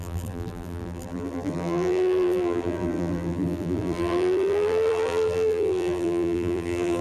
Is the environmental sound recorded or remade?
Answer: remade